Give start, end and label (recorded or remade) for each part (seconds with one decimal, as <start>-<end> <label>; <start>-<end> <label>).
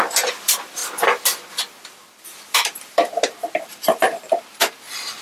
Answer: 0.0-0.8 remade; 0.8-2.9 recorded; 2.9-5.2 remade